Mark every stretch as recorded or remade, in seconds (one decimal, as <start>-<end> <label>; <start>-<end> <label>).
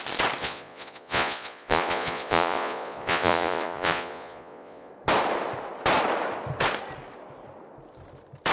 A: 0.0-0.4 recorded; 0.4-4.9 remade; 4.9-8.5 recorded